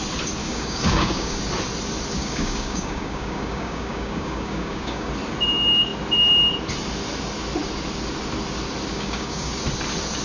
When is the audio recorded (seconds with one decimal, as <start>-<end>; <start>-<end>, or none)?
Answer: 0.0-0.4; 1.4-2.2; 5.1-8.9; 9.5-10.2